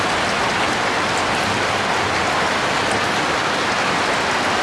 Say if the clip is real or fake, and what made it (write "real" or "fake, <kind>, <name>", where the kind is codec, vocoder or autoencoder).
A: real